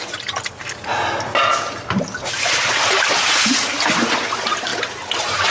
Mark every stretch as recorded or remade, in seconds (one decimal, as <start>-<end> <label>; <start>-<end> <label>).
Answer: 0.0-5.5 recorded